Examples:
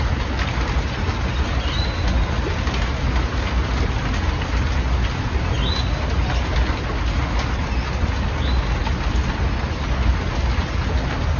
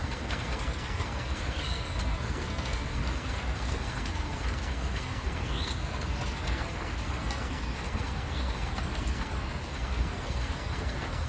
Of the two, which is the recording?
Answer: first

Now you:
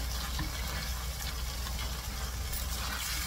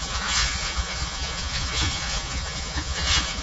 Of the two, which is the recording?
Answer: first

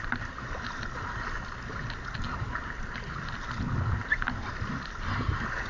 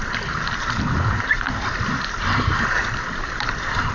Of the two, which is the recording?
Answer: first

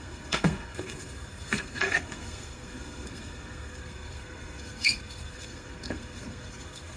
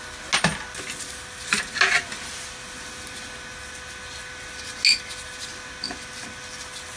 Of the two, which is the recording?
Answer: second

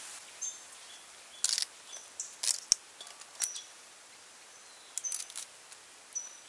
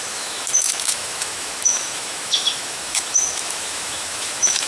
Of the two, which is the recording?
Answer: first